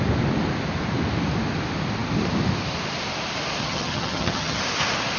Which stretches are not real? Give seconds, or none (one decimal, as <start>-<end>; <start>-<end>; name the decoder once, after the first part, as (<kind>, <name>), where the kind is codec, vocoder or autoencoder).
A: 3.6-4.6 (vocoder, HiFi-GAN)